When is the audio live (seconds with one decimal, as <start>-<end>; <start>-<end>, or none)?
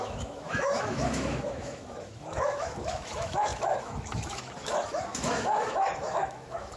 none